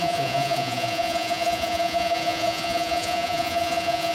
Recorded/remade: remade